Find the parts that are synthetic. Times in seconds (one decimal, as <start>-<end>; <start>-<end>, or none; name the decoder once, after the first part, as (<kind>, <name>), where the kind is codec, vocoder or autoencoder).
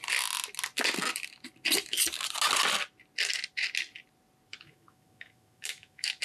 4.5-6.2 (autoencoder, DAC-VAE)